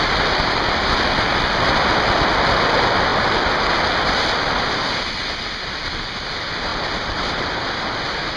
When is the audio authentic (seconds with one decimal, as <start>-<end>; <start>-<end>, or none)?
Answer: 0.0-8.4